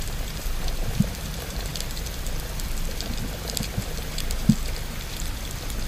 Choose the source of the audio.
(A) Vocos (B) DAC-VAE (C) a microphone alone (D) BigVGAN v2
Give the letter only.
C